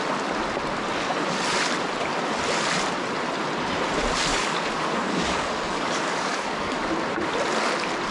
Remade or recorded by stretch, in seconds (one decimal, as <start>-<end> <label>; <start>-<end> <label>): 0.0-4.3 recorded; 4.3-6.9 remade; 6.9-8.1 recorded